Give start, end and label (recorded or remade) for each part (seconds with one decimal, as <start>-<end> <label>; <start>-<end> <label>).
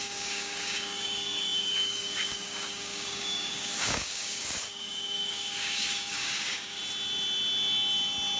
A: 0.0-6.8 remade; 6.8-8.4 recorded